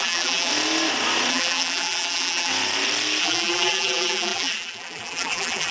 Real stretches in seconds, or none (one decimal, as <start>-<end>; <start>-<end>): 0.5-1.3; 2.5-3.2